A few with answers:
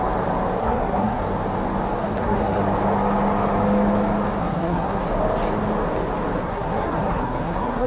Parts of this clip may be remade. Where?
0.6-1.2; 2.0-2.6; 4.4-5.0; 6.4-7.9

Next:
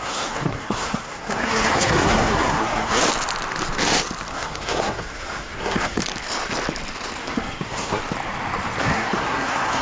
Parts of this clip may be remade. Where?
0.0-3.0; 4.3-6.0; 7.2-8.0; 8.8-9.8

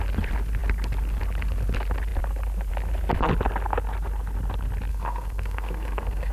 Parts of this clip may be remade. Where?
4.9-6.3

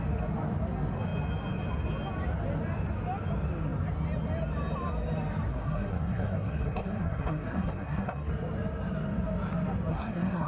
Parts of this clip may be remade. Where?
5.5-8.3; 9.9-10.5

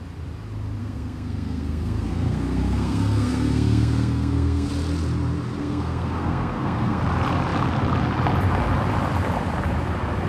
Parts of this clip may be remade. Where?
0.8-4.7; 5.6-7.0

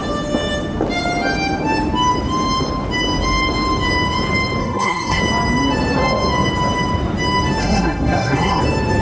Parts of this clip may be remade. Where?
4.6-5.2; 7.6-8.6

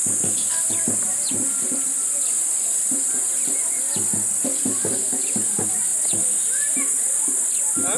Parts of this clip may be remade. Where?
none

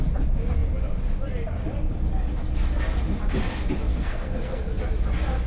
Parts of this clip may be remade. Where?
3.9-4.8